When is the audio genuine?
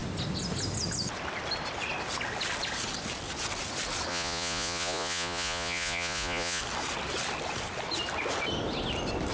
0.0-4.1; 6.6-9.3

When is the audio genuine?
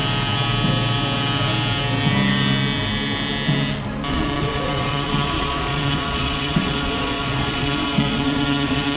0.0-4.1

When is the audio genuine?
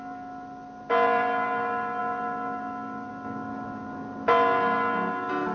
0.0-5.5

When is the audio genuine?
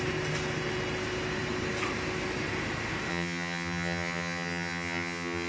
0.0-3.1